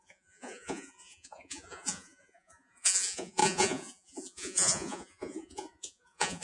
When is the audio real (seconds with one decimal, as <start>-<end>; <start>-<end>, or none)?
none